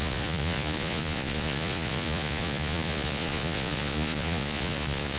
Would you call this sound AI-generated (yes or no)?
yes